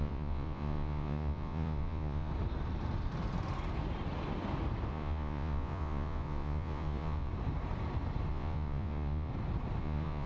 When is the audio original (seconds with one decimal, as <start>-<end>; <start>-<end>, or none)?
2.3-4.9; 7.3-8.3; 9.3-9.8